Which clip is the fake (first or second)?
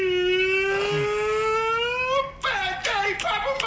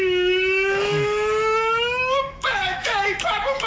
second